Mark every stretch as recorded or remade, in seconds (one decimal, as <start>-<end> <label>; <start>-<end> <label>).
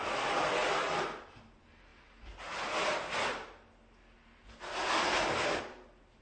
0.0-6.2 recorded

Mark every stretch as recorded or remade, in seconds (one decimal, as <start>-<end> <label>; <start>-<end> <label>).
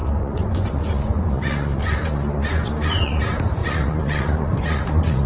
0.0-3.2 remade; 3.2-3.6 recorded; 3.6-5.3 remade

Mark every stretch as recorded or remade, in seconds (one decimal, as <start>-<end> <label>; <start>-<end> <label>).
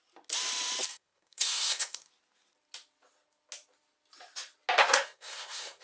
0.0-0.9 recorded; 0.9-2.1 remade; 2.1-4.8 recorded; 4.8-5.8 remade